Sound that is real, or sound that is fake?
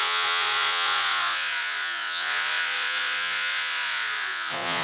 fake